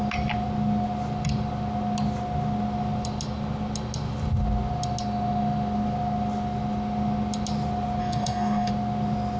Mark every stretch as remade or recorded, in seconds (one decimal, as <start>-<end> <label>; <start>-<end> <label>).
0.0-8.0 recorded; 8.0-8.7 remade; 8.7-9.4 recorded